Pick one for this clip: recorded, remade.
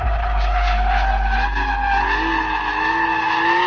recorded